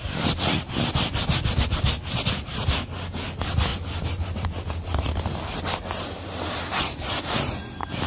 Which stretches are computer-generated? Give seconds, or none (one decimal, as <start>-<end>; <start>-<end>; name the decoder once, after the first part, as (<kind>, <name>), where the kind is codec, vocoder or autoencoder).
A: none